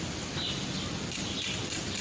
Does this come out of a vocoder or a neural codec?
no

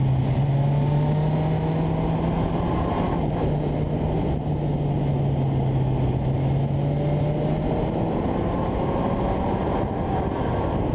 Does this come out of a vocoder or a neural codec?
no